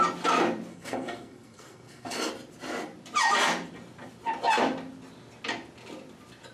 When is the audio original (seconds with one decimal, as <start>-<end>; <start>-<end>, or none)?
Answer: 0.0-0.7; 2.3-6.5